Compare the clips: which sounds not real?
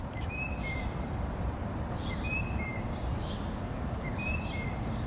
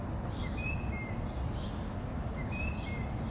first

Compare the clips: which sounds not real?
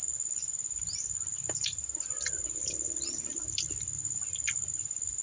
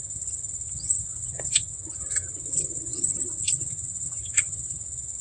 second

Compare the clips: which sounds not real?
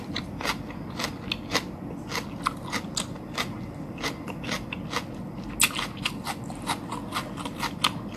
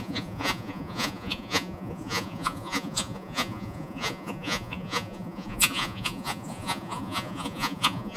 second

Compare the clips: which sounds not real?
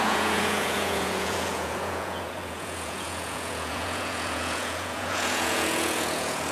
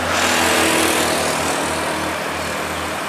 first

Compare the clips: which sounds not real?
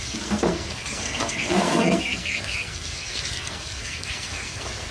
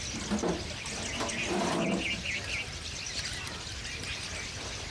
first